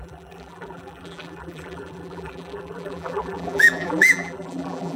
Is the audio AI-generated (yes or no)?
yes